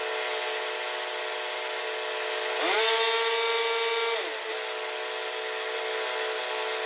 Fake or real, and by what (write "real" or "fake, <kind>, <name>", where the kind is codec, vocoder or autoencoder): real